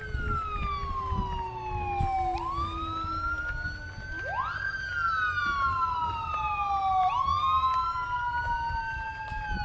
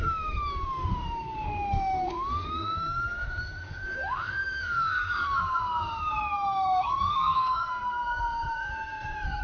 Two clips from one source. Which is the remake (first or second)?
second